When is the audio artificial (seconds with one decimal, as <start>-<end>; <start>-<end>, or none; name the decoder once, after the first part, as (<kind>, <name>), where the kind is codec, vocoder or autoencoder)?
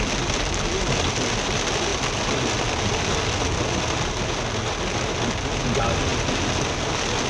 1.9-2.8 (vocoder, BigVGAN v2)